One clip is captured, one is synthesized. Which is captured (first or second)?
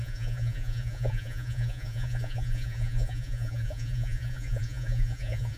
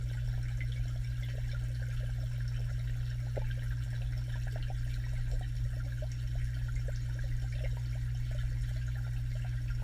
second